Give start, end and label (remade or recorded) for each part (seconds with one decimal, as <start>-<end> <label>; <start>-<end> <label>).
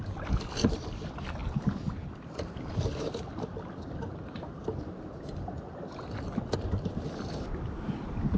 0.0-1.4 recorded; 1.4-3.2 remade; 3.2-8.4 recorded